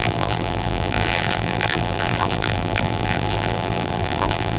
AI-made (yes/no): yes